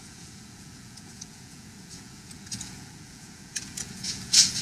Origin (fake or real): fake